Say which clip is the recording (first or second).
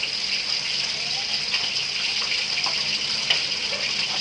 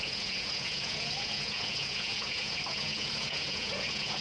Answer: first